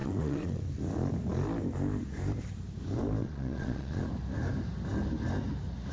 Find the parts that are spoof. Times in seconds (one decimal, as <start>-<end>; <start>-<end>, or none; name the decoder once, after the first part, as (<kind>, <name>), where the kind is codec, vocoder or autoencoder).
0.0-0.6 (vocoder, Vocos); 3.2-4.0